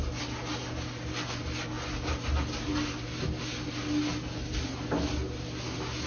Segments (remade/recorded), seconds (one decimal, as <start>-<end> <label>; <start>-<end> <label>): 0.0-6.1 recorded